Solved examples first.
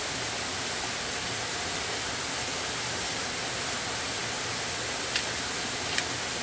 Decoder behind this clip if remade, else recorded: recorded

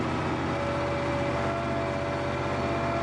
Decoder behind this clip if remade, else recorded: recorded